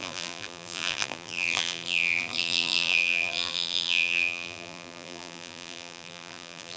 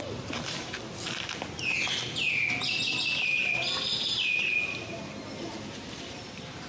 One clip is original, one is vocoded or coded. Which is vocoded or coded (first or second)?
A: first